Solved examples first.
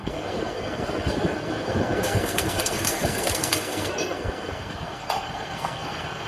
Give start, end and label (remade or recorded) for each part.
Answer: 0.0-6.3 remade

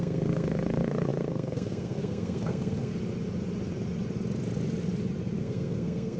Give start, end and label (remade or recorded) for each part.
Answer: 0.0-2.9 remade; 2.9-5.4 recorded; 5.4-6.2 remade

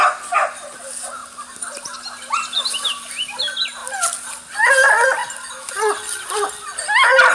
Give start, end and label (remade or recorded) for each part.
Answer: 0.0-1.2 recorded; 1.2-3.4 remade; 3.4-3.8 recorded; 3.8-4.5 remade; 4.5-5.2 recorded; 5.2-6.5 remade; 6.5-7.3 recorded

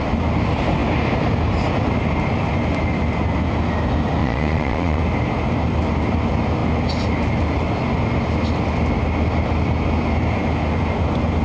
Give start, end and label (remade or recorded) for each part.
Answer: 0.0-4.2 recorded; 4.2-5.0 remade; 5.0-11.4 recorded

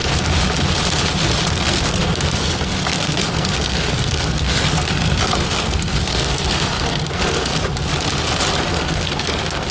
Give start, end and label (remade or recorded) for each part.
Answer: 0.0-1.5 recorded; 1.5-7.5 remade; 7.5-8.7 recorded; 8.7-9.7 remade

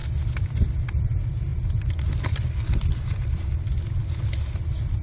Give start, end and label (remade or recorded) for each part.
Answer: 0.0-1.5 recorded; 1.5-3.9 remade; 3.9-5.0 recorded